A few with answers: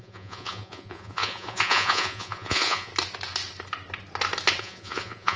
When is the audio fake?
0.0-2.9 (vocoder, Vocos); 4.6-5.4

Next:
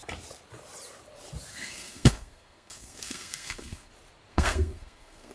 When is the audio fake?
1.5-3.9 (codec, SNAC); 4.3-5.3

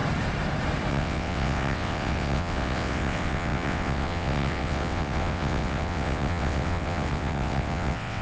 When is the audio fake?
0.9-8.2 (vocoder, WaveNeXt)

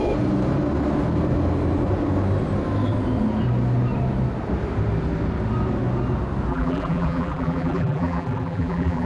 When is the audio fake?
6.5-9.1 (vocoder, BigVGAN v2)

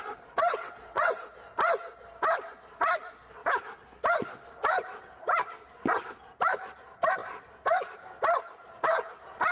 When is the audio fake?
0.5-1.2 (vocoder, WaveNeXt)

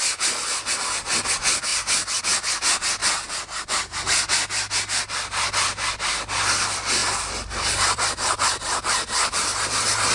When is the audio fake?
7.0-9.4 (vocoder, BigVGAN v2)